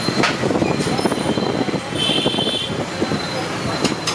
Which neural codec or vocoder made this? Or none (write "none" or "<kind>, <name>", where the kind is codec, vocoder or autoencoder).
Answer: none